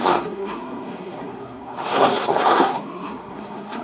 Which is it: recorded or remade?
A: remade